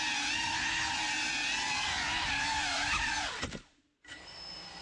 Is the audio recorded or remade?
recorded